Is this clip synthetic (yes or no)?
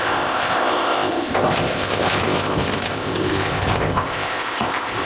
yes